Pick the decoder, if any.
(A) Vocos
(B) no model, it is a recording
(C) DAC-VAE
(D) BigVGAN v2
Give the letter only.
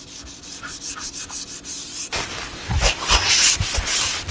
B